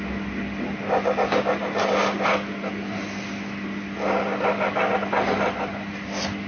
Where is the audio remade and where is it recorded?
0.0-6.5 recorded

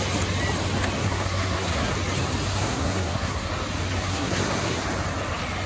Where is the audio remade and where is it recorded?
0.0-1.0 recorded; 1.0-1.9 remade; 1.9-2.5 recorded; 2.5-3.5 remade; 3.5-4.1 recorded; 4.1-4.8 remade; 4.8-5.7 recorded

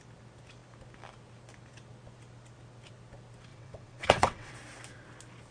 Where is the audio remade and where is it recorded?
0.0-3.5 recorded; 3.5-4.5 remade; 4.5-5.5 recorded

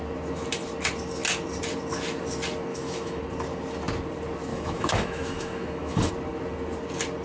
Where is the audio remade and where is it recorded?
0.0-2.7 recorded; 2.7-3.2 remade; 3.2-4.5 recorded; 4.5-6.1 remade; 6.1-7.2 recorded

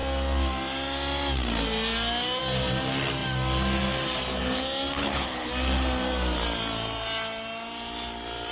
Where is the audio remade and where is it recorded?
0.0-5.0 recorded; 5.0-5.5 remade; 5.5-8.5 recorded

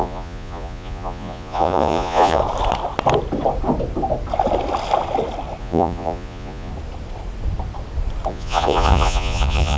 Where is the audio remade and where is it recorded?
0.0-2.4 remade; 2.4-5.6 recorded; 5.6-6.7 remade; 6.7-8.3 recorded; 8.3-9.8 remade